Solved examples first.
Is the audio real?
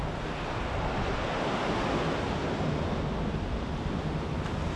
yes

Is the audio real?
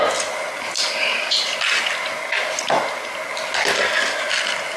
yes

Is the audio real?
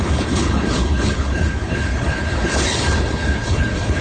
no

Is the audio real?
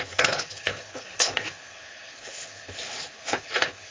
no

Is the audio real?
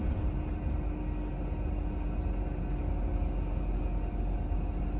yes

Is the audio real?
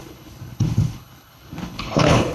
no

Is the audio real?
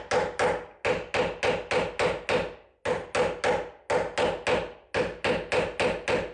yes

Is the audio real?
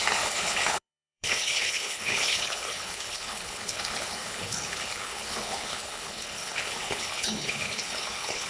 no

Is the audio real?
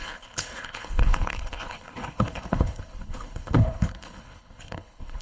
no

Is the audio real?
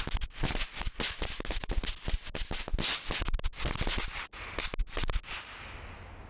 yes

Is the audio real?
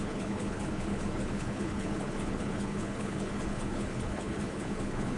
no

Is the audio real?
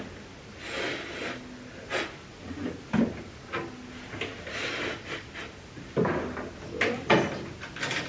yes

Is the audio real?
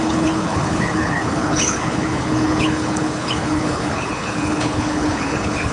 no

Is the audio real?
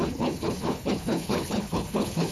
no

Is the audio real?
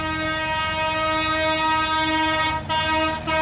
yes